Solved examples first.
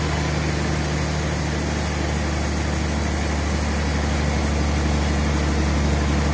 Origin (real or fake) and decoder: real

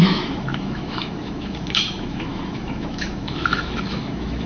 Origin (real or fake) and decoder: fake, autoencoder, DAC-VAE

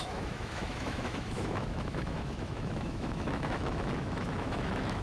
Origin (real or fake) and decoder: fake, autoencoder, DAC-VAE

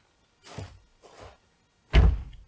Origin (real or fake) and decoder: real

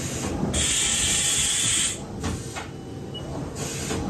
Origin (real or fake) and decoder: real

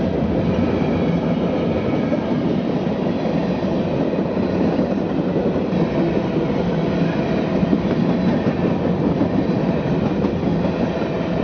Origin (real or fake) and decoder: real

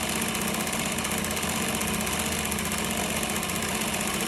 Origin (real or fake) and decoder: real